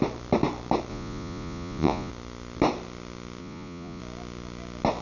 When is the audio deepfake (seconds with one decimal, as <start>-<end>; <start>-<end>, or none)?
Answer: 0.9-2.1; 3.4-4.0

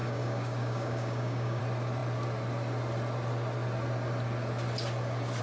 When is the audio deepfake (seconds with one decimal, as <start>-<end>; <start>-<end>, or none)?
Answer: 0.0-1.6

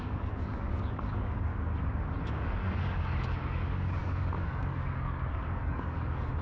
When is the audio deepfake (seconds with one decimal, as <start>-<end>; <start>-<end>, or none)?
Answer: 0.0-1.5; 2.2-6.4

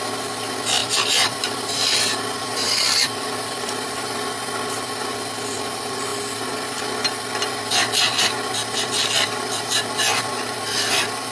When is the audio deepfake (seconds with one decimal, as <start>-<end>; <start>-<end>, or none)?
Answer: 0.8-4.3